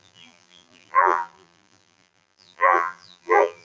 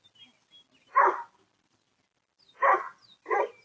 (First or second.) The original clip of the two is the second